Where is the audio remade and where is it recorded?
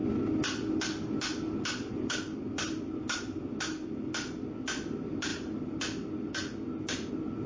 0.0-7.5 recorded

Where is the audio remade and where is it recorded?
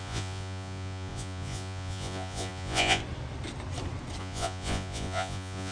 0.0-3.0 remade; 3.0-4.2 recorded; 4.2-5.7 remade